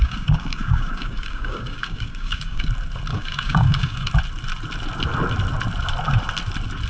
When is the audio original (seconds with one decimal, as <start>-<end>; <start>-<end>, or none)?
2.7-3.1; 4.1-6.9